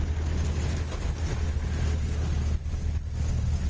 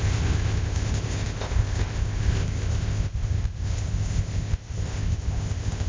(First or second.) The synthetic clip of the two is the second